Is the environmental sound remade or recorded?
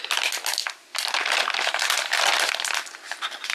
recorded